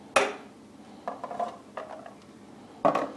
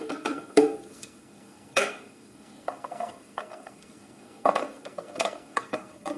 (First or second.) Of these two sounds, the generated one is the second